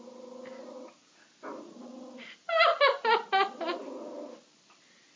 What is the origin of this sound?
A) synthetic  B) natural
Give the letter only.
B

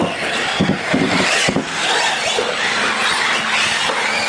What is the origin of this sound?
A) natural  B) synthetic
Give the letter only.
A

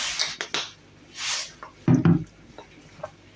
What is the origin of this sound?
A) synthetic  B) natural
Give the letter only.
B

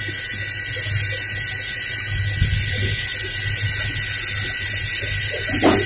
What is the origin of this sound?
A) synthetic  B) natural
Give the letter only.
B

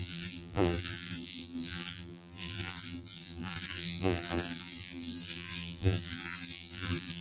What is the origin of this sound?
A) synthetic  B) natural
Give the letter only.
A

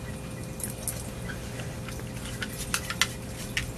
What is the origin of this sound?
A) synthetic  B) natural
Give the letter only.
B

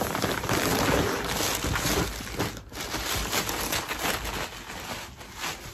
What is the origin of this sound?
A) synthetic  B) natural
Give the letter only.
B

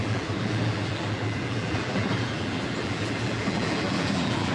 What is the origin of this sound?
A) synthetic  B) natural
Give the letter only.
A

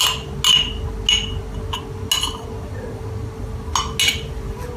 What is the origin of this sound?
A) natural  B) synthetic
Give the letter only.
A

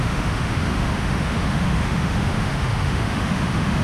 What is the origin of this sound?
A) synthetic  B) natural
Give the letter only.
A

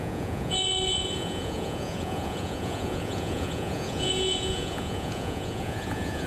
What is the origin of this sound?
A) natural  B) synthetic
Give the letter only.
B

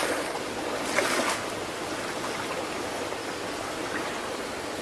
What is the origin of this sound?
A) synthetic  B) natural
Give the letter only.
B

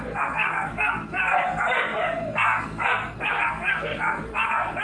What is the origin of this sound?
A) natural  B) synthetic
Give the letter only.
B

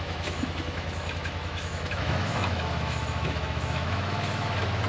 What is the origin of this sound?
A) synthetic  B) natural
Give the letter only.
A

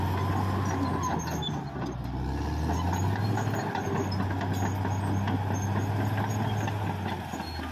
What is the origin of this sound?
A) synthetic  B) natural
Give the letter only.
B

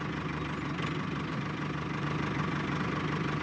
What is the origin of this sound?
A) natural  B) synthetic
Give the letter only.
A